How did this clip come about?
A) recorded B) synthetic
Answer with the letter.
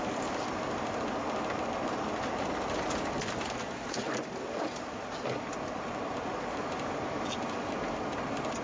A